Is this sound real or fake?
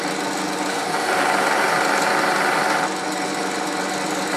real